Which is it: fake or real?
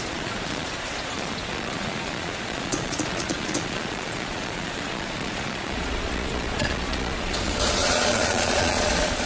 fake